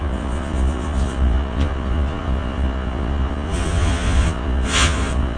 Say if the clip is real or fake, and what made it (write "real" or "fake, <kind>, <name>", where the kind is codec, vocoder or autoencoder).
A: fake, vocoder, Vocos